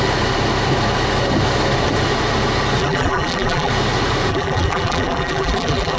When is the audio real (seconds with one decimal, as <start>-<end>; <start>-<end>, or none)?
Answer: 0.0-2.8; 3.7-4.3